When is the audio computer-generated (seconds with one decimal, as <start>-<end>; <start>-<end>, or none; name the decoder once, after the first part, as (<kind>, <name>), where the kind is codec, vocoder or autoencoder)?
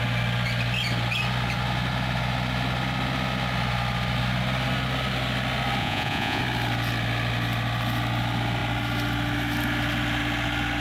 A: 5.8-6.4 (vocoder, Vocos)